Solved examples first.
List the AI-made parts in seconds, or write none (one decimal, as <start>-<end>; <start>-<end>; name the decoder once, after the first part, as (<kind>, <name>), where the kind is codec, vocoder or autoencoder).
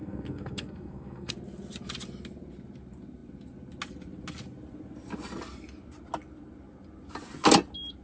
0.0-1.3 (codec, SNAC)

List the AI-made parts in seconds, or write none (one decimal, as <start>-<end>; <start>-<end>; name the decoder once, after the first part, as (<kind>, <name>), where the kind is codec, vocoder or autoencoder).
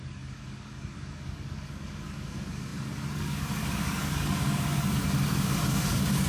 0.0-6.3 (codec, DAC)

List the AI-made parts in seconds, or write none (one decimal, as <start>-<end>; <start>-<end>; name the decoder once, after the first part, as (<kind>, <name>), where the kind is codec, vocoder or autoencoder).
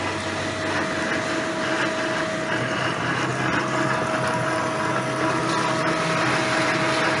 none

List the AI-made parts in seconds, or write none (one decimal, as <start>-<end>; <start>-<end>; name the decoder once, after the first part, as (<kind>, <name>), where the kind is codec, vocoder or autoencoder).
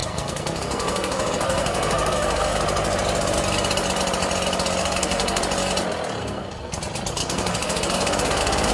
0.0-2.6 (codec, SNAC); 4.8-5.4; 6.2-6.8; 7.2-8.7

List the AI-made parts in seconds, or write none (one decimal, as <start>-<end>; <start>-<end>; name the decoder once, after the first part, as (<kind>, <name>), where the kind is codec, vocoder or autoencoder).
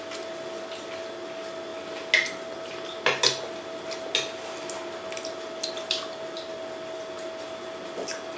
none